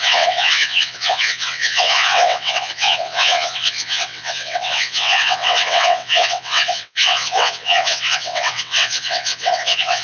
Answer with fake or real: fake